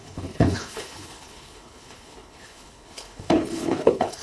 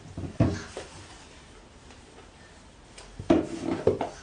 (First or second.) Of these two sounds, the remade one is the first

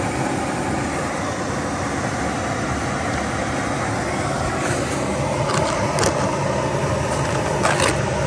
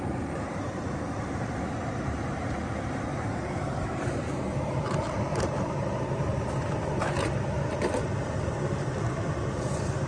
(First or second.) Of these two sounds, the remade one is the second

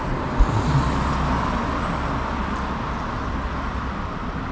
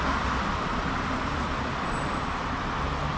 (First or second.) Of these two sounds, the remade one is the second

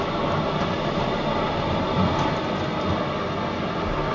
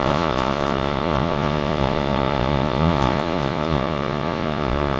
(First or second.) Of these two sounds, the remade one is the second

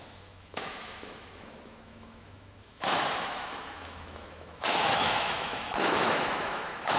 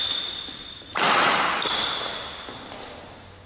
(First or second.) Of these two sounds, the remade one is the first